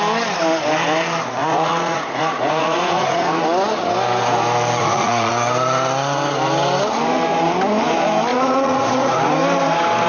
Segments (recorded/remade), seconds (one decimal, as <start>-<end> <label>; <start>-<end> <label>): 0.0-1.4 recorded; 1.4-3.4 remade; 3.4-4.8 recorded; 4.8-5.3 remade; 5.3-8.3 recorded; 8.3-9.3 remade; 9.3-10.1 recorded